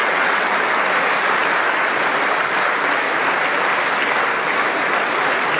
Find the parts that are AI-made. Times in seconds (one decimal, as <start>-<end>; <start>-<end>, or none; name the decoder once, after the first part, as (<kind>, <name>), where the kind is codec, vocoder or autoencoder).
0.0-0.5 (vocoder, WaveNeXt)